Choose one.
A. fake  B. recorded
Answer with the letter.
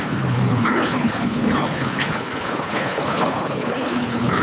A